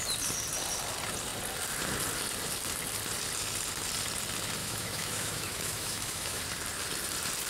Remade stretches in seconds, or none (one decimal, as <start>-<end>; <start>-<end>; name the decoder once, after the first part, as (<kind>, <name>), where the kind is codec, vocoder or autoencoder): 4.6-6.4 (autoencoder, DAC-VAE)